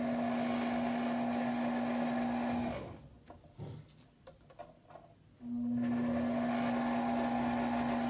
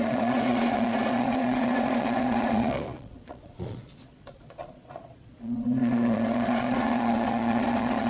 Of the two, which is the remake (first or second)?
second